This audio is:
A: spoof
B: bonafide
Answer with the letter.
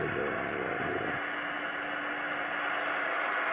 B